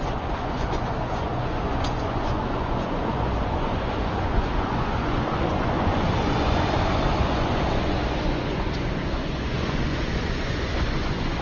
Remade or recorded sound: remade